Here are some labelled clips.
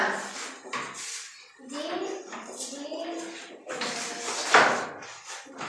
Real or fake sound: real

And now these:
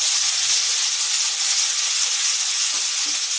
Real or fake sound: real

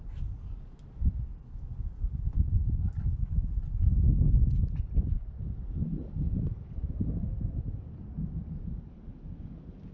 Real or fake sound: real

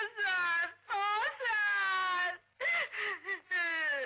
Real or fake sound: real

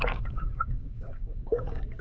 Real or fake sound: fake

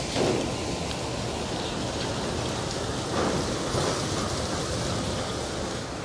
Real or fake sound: real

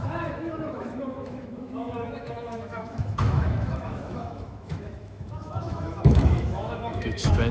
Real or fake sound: fake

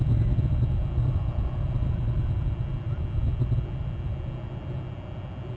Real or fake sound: real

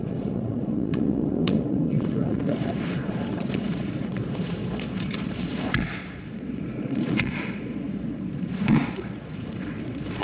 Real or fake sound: fake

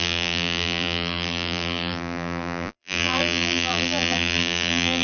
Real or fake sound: fake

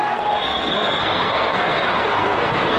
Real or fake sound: fake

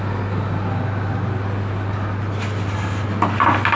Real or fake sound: real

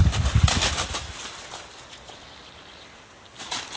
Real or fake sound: real